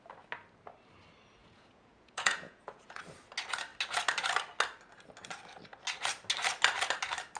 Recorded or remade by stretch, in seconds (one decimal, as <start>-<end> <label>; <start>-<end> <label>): 0.0-1.4 recorded; 1.4-3.0 remade; 3.0-7.4 recorded